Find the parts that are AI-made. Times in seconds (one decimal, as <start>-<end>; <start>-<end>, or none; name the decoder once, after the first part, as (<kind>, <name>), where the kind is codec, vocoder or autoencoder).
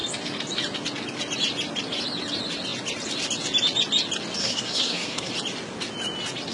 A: 4.4-5.3 (codec, SNAC)